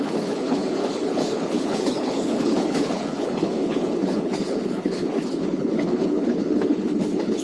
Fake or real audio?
fake